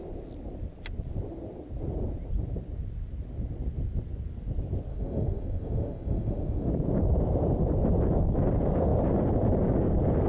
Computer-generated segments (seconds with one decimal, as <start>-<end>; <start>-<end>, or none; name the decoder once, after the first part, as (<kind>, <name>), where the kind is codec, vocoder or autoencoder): 4.9-6.7 (autoencoder, DAC-VAE)